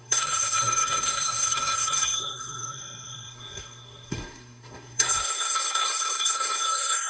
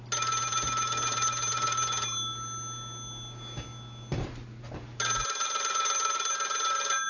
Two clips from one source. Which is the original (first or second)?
second